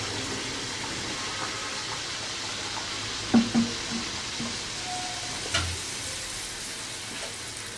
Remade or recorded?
recorded